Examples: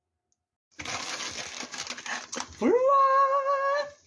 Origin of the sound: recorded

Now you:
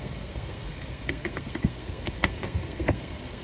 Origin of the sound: remade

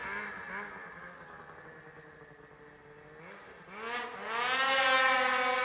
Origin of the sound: recorded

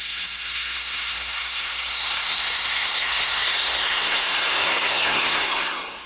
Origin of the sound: remade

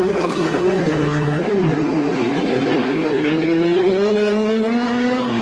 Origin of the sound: remade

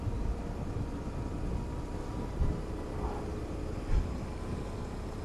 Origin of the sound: recorded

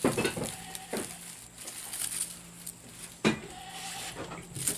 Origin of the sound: recorded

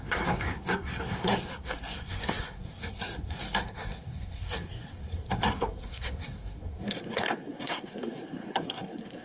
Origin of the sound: remade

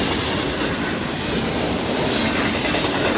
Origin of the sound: recorded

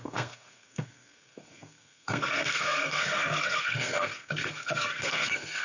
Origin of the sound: remade